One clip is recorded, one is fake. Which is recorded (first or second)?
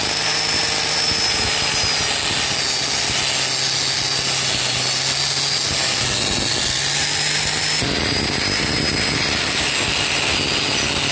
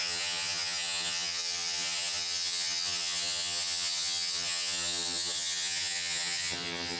first